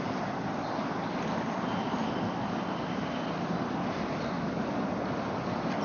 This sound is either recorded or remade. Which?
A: recorded